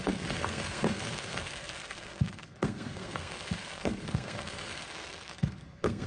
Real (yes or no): no